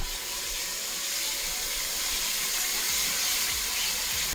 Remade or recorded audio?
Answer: recorded